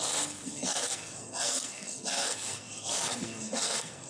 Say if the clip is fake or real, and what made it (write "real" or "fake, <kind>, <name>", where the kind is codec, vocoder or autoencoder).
fake, codec, SNAC